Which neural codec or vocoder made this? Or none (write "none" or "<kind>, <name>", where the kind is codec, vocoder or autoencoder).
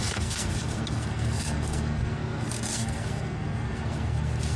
codec, SNAC